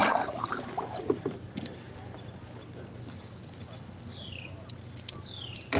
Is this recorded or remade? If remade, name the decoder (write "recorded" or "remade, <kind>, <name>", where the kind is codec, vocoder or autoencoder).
recorded